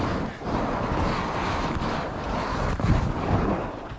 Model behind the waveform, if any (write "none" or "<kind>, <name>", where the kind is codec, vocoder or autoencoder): none